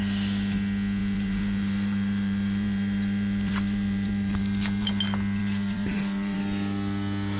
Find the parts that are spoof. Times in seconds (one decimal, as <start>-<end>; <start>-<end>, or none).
1.0-4.9; 5.4-6.4